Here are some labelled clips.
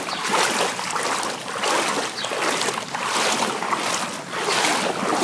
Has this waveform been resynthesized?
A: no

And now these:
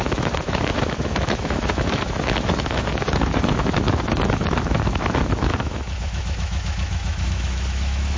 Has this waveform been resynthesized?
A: yes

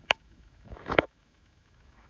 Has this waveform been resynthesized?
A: yes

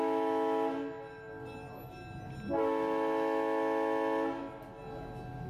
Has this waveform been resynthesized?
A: no